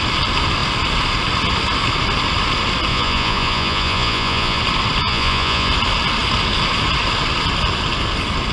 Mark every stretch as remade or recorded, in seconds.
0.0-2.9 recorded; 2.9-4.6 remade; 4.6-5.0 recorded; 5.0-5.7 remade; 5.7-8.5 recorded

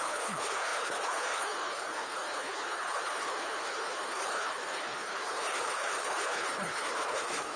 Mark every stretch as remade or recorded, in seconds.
0.0-7.6 remade

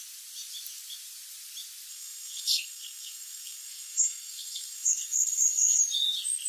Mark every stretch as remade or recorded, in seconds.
0.0-1.9 recorded; 1.9-5.8 remade; 5.8-6.5 recorded

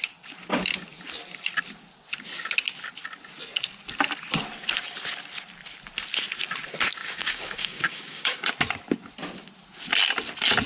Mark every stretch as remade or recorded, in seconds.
0.0-7.0 recorded; 7.0-8.5 remade; 8.5-10.7 recorded